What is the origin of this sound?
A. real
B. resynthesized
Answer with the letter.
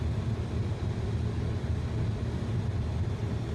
A